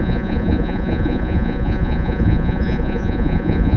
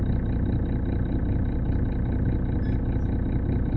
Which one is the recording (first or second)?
second